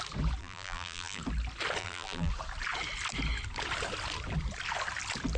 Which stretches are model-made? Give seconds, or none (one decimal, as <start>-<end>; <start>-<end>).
0.4-1.2; 1.8-2.3